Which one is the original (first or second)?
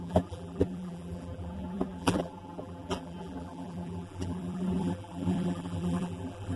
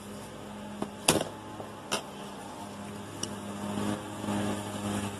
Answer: second